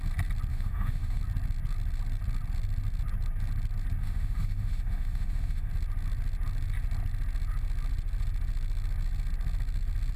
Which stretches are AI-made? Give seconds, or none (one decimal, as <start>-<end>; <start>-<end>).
0.5-1.2; 4.0-5.7